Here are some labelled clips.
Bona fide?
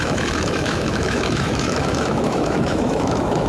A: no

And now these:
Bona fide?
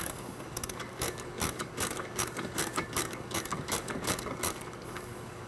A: no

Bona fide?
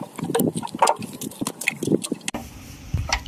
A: yes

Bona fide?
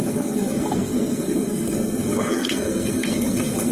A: no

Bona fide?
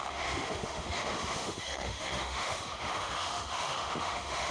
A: no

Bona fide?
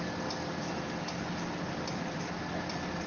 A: yes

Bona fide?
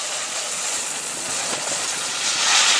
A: no